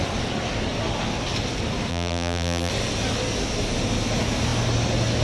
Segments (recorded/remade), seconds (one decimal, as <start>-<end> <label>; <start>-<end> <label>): 0.0-1.9 recorded; 1.9-2.7 remade; 2.7-5.2 recorded